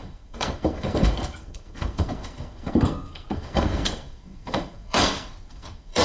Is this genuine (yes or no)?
no